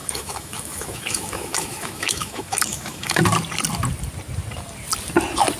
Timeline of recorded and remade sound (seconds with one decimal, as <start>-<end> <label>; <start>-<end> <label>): 0.0-3.2 remade; 3.2-5.6 recorded